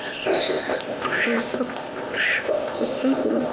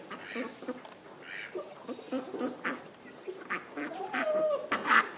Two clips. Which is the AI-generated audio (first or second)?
first